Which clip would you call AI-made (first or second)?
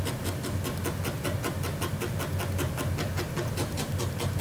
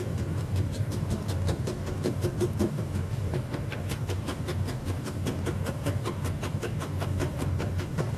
second